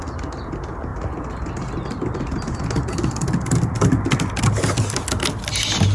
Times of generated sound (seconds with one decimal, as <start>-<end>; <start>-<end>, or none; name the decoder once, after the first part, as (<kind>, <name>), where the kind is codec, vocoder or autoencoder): none